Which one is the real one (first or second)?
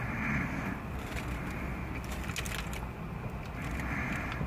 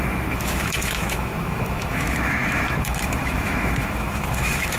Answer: first